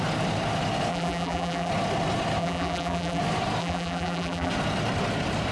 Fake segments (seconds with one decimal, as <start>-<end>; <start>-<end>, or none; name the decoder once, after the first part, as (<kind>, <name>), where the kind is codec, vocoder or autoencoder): 0.9-1.7 (vocoder, BigVGAN v2); 2.4-3.2; 3.6-4.5